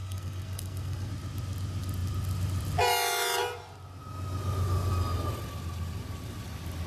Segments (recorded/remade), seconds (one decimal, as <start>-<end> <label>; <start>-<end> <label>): 0.0-1.1 remade; 1.1-6.9 recorded